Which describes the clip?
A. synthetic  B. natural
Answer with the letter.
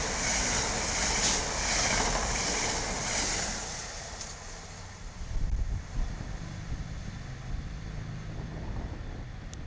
B